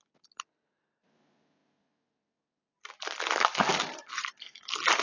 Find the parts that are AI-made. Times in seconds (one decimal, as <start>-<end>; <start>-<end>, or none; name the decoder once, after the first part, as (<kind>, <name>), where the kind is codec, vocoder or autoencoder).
none